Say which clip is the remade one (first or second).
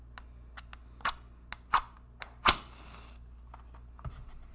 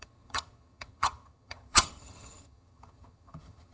second